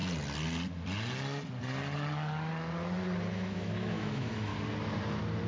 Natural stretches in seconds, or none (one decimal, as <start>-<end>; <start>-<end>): 0.0-3.3; 4.5-5.5